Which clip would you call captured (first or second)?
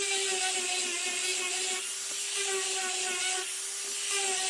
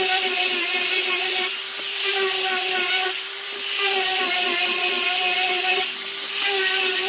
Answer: first